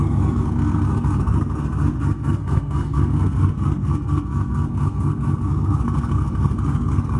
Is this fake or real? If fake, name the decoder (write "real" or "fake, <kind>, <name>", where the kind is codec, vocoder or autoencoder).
fake, codec, SNAC